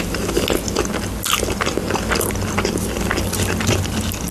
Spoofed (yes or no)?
no